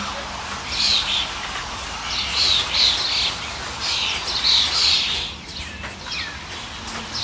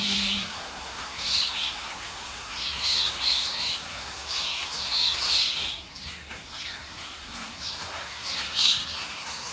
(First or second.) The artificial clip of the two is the second